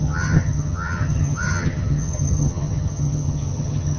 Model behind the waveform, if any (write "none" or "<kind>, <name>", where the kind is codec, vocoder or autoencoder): vocoder, HiFi-GAN